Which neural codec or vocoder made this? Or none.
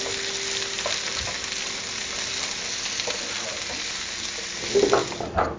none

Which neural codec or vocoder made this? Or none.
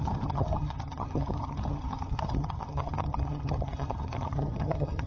vocoder, HiFi-GAN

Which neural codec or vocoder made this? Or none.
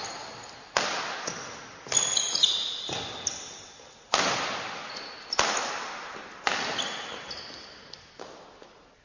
none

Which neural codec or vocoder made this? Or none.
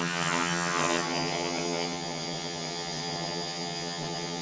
vocoder, HiFi-GAN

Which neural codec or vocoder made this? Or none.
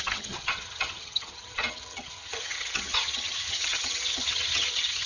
vocoder, HiFi-GAN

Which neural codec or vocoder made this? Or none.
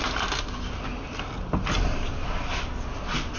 none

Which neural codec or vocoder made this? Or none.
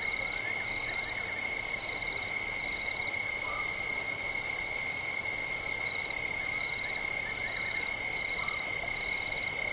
none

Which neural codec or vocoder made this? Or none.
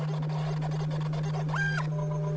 none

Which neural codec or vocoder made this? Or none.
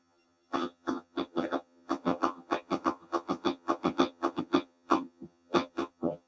vocoder, HiFi-GAN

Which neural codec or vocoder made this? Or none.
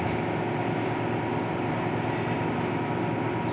none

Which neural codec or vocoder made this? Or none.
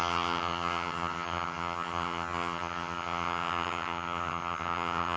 vocoder, HiFi-GAN